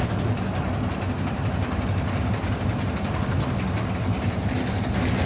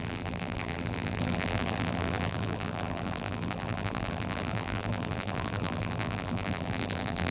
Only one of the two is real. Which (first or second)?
first